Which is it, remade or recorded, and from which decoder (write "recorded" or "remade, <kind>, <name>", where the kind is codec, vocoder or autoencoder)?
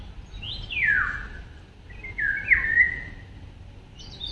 recorded